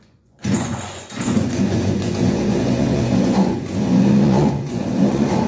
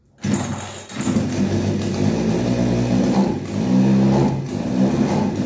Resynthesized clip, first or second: first